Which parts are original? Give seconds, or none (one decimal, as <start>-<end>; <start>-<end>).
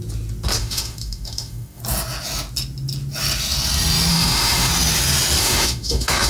0.0-0.6; 1.8-4.1; 4.7-5.4